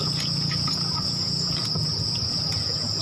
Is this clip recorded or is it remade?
remade